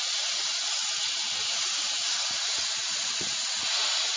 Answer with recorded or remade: remade